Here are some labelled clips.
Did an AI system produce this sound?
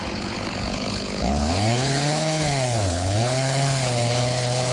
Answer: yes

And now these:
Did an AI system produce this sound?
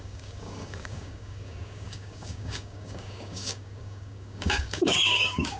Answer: yes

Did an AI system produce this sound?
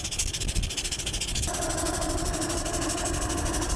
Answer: no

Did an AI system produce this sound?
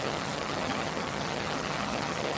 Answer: yes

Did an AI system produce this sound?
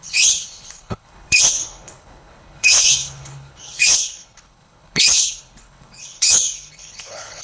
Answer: yes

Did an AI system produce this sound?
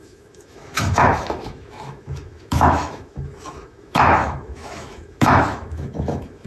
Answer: yes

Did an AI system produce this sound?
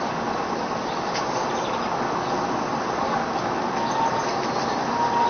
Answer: no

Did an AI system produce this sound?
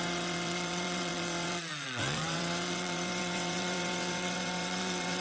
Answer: yes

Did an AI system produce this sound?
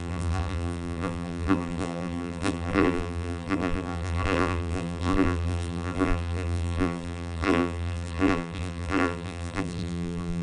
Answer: yes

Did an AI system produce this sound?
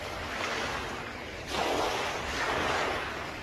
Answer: yes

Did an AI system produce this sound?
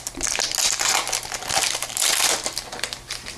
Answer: no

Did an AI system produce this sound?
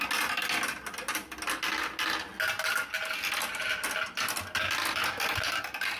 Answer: no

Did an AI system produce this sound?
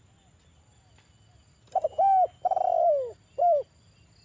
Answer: no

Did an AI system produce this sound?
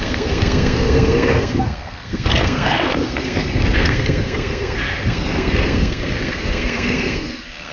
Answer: yes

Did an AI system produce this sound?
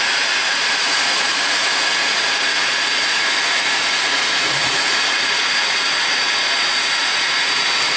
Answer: yes